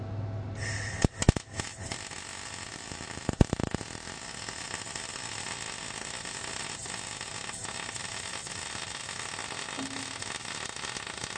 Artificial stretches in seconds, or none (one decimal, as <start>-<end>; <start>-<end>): none